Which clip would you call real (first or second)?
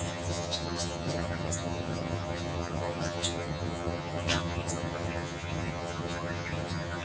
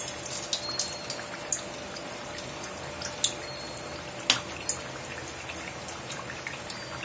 second